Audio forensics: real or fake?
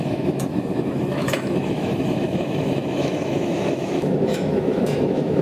fake